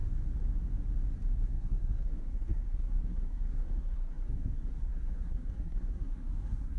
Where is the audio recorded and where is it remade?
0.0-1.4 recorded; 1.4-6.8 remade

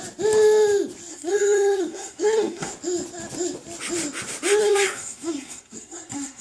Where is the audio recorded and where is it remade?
0.0-1.1 recorded; 1.1-2.7 remade; 2.7-4.6 recorded; 4.6-6.4 remade

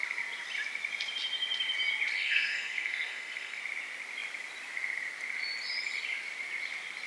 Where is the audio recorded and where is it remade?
0.0-2.1 recorded; 2.1-3.6 remade; 3.6-7.1 recorded

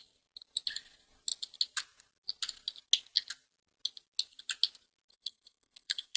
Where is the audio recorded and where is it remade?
0.0-5.1 recorded; 5.1-6.2 remade

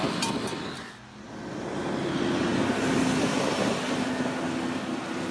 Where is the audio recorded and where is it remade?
0.0-5.3 recorded